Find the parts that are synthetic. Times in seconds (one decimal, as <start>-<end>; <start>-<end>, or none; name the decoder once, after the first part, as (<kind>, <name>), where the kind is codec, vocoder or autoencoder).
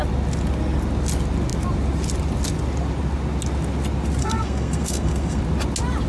4.2-5.4 (codec, SNAC)